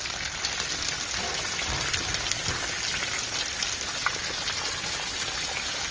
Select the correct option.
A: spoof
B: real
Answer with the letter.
B